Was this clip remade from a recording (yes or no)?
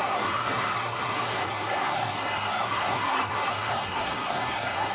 yes